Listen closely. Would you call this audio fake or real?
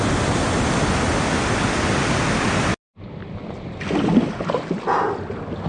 real